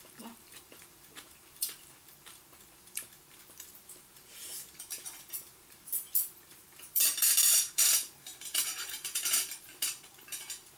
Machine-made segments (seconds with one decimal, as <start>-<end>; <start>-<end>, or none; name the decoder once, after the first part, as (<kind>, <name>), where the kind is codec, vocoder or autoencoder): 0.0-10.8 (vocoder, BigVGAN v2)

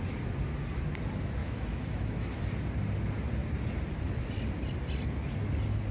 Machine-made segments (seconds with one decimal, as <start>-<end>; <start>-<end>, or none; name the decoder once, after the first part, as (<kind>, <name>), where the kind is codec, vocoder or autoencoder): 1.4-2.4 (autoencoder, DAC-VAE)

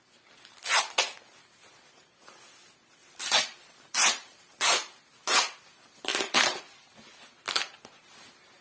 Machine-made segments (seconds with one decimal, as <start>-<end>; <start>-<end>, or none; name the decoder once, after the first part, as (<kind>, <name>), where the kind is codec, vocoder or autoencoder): 3.0-4.5 (vocoder, BigVGAN v2); 6.1-6.6

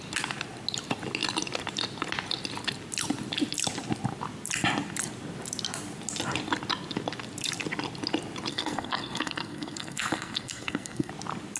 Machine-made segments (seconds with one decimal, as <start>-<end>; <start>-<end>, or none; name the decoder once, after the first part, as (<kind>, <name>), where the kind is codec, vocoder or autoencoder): 8.5-11.1 (codec, SNAC)